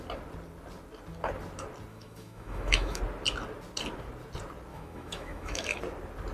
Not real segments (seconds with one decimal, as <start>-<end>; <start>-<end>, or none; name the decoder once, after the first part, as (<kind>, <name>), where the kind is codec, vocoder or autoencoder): 1.9-3.0 (autoencoder, DAC-VAE); 4.7-5.8